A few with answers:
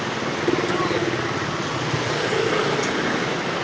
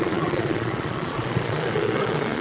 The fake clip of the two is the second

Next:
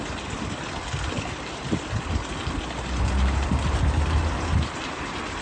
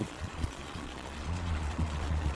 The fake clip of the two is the second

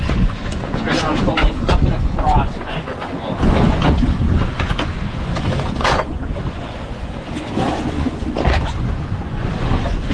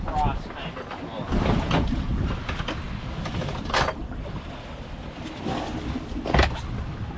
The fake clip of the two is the first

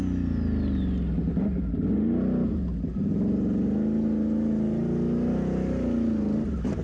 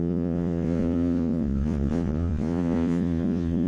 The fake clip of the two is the second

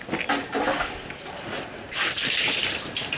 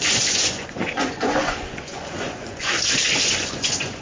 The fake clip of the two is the second